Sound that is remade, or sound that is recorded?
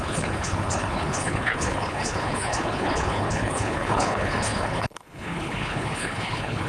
remade